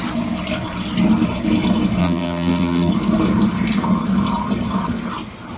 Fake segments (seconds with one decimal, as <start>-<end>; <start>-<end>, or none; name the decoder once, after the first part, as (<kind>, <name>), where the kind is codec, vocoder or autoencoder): 2.0-2.9 (vocoder, BigVGAN v2)